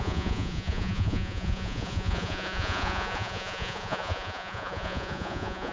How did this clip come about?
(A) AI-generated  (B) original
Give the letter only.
A